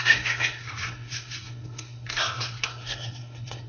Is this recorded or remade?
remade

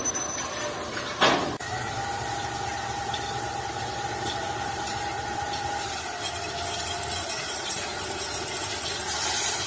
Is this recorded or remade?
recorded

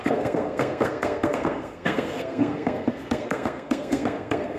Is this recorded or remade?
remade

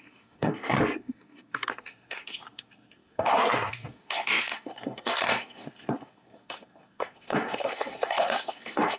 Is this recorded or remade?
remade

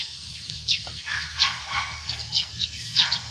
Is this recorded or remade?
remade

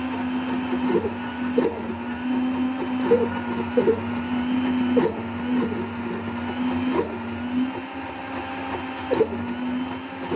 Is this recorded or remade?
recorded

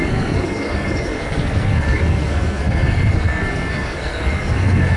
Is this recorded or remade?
remade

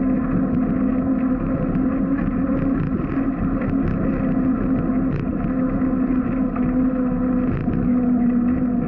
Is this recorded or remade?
recorded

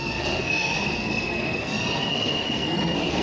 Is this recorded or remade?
remade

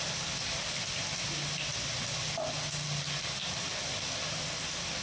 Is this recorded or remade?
recorded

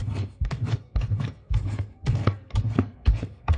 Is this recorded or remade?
remade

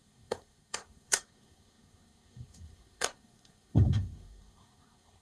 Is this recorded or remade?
remade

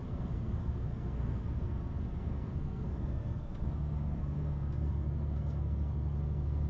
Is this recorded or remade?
remade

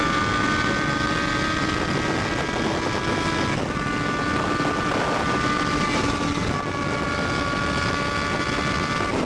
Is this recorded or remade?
recorded